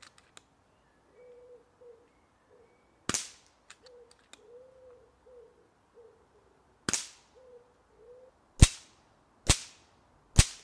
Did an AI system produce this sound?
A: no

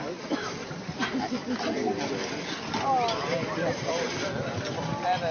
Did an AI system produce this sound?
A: no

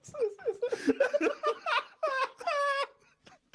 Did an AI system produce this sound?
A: no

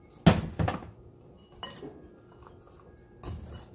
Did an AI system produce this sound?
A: no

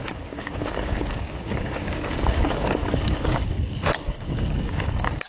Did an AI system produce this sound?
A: yes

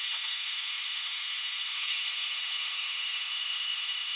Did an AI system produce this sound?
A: yes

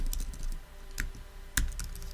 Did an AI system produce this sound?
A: no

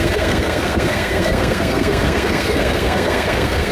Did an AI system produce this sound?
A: yes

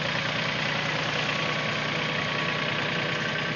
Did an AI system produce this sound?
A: no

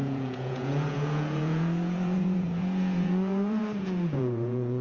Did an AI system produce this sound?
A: yes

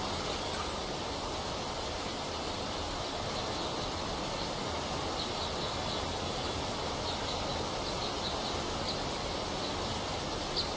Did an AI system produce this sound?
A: no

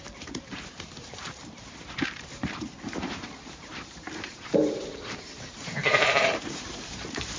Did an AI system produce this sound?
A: yes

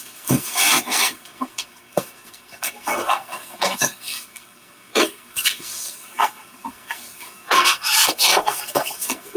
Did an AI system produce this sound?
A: yes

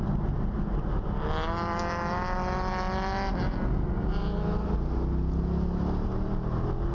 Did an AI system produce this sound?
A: no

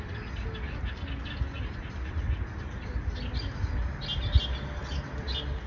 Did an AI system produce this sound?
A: no